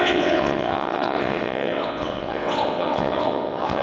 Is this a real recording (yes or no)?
no